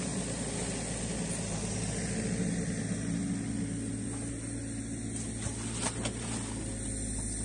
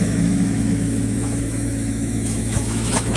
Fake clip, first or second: second